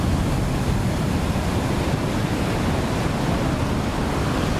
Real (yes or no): yes